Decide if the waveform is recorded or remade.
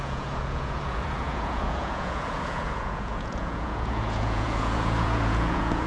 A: remade